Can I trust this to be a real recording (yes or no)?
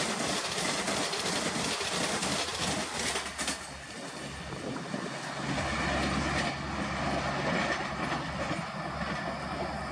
yes